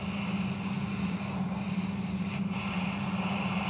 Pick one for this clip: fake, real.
real